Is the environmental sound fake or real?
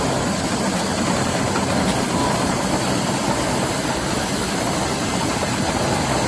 real